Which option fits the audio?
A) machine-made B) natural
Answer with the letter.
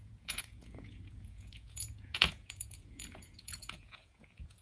A